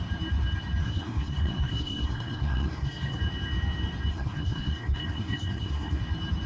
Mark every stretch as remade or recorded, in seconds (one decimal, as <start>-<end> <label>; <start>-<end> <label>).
0.0-0.8 recorded; 0.8-3.2 remade; 3.2-4.1 recorded; 4.1-6.0 remade; 6.0-6.5 recorded